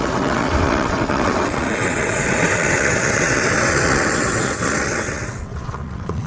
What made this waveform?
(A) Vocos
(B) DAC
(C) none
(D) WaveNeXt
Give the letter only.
D